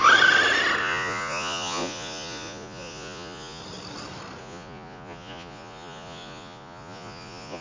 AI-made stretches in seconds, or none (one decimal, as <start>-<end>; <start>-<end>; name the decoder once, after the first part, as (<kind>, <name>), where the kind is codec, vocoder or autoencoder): 0.8-3.6 (vocoder, Vocos); 4.4-7.6